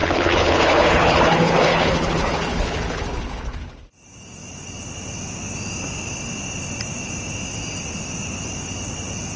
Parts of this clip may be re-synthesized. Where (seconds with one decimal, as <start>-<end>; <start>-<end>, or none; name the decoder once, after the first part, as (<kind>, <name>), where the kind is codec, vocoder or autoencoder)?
0.0-3.9 (codec, HILCodec)